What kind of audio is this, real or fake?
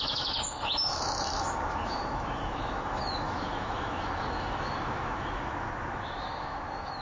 fake